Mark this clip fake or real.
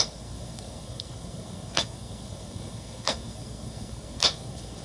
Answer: fake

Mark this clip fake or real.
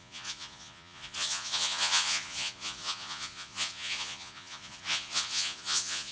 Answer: fake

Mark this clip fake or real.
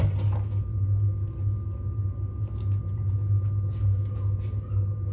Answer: real